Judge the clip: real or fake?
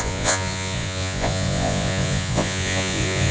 fake